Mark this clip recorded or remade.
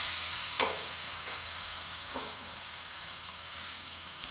remade